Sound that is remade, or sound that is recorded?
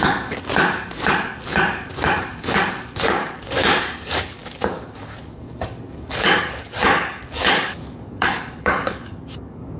remade